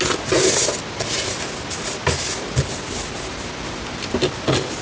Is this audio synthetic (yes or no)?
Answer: no